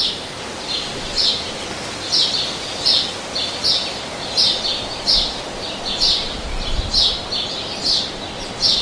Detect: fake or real real